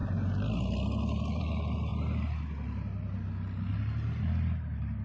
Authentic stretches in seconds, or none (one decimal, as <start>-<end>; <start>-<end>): 0.0-5.0